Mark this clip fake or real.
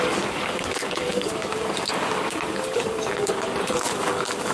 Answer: fake